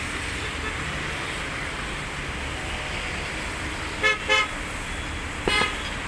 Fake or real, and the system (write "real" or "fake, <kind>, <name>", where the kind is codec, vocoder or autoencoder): real